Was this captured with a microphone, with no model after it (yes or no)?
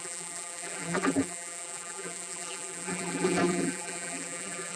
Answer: no